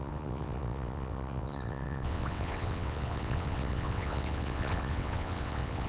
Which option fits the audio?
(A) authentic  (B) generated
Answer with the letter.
B